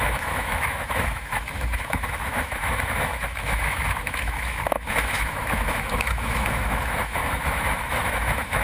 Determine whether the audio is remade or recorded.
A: remade